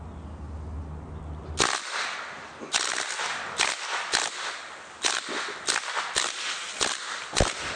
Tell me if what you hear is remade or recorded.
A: recorded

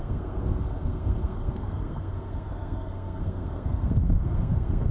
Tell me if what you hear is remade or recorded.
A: remade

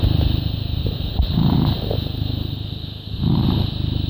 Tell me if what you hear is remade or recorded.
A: recorded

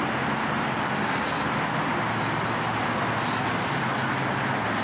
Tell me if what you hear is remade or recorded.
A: recorded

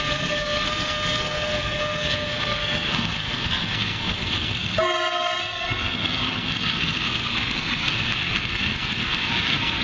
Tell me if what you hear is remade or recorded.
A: remade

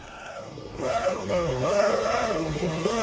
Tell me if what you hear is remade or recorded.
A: remade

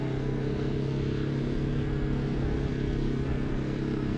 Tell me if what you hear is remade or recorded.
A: remade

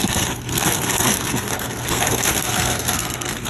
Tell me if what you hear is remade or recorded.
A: remade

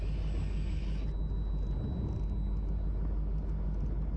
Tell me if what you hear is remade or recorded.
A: recorded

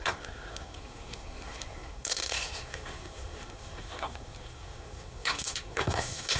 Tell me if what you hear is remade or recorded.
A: remade